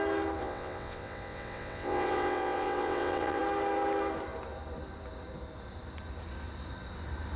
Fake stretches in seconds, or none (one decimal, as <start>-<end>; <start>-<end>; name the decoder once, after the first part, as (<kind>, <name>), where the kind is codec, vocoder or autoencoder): 0.4-3.4 (vocoder, WaveNeXt)

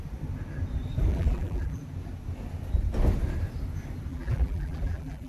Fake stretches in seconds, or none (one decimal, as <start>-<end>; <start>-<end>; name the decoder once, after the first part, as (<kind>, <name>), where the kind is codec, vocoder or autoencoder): 1.1-1.8 (vocoder, BigVGAN v2); 4.1-5.3

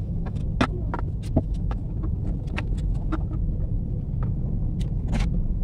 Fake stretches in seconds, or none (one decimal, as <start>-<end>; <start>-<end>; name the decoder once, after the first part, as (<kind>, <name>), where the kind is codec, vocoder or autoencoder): 0.0-0.4 (autoencoder, DAC-VAE); 1.4-1.8

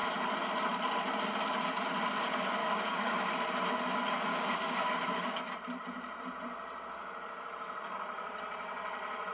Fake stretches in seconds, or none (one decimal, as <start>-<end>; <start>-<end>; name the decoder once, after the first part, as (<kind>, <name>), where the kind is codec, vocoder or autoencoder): 2.6-3.3 (codec, DAC); 4.3-5.4

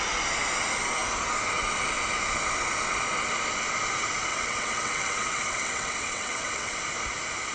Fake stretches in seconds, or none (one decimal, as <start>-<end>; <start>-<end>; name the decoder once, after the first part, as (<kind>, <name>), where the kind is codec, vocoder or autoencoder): 4.3-6.8 (vocoder, WaveNeXt)

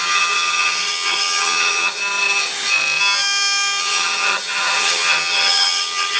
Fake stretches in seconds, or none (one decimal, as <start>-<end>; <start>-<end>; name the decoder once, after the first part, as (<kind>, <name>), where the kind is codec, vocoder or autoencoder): 0.0-2.0 (vocoder, HiFi-GAN); 3.8-6.2